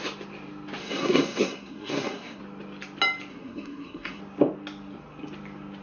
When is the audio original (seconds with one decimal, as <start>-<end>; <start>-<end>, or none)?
0.0-0.8; 2.4-3.3; 4.2-5.8